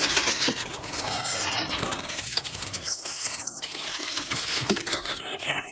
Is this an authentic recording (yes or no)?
no